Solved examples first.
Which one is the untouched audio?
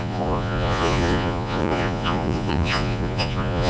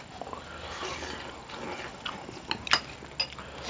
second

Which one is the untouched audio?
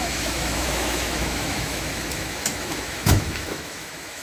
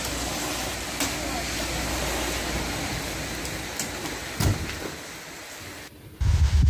second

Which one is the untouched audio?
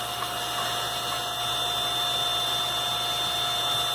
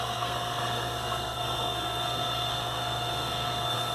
first